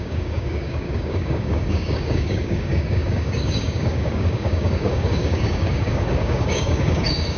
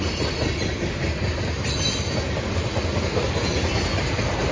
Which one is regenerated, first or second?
first